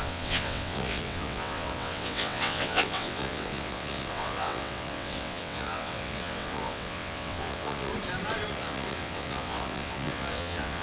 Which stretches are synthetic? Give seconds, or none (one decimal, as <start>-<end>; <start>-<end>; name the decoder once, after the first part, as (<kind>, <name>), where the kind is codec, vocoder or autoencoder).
0.0-7.9 (vocoder, WaveNeXt); 8.5-10.8